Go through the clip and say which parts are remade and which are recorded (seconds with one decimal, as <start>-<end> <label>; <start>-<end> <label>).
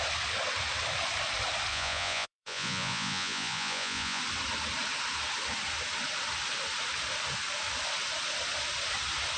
0.0-1.7 recorded; 1.7-4.2 remade; 4.2-9.4 recorded